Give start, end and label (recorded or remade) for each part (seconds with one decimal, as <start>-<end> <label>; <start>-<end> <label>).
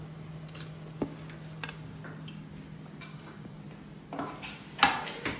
0.0-3.1 recorded; 3.1-3.6 remade; 3.6-5.4 recorded